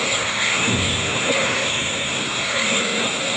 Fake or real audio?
fake